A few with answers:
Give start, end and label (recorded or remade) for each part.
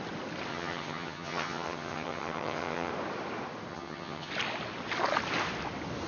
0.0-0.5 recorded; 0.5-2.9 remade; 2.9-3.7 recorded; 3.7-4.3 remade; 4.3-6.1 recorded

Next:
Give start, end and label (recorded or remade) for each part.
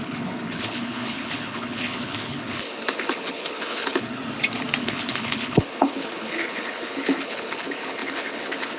0.0-4.2 remade; 4.2-4.8 recorded; 4.8-8.8 remade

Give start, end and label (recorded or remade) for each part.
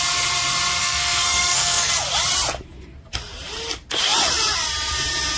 0.0-0.8 recorded; 0.8-1.9 remade; 1.9-5.4 recorded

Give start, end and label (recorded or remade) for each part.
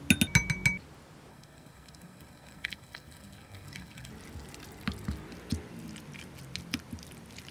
0.0-1.3 recorded; 1.3-4.1 remade; 4.1-7.5 recorded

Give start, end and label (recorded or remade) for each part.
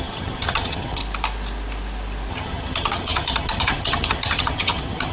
0.0-1.0 remade; 1.0-2.3 recorded; 2.3-5.1 remade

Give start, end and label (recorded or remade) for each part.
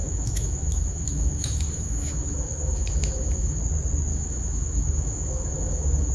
0.0-3.6 remade; 3.6-4.1 recorded; 4.1-6.1 remade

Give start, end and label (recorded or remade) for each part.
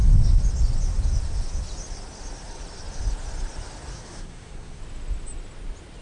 0.0-3.9 recorded; 3.9-4.8 remade; 4.8-6.0 recorded